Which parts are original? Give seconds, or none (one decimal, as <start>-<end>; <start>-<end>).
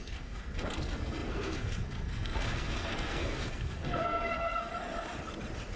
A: 4.7-5.8